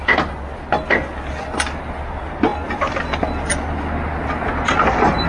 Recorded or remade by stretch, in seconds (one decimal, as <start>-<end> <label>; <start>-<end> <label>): 0.0-2.5 recorded; 2.5-3.0 remade; 3.0-5.3 recorded